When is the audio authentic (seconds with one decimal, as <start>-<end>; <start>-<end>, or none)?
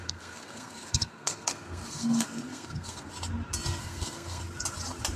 3.1-3.8; 4.4-5.2